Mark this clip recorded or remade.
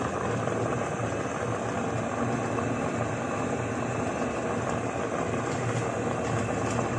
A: recorded